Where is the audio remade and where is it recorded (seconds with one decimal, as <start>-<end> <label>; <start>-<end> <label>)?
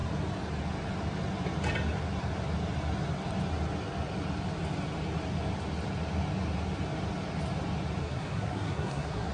0.0-8.0 recorded; 8.0-9.3 remade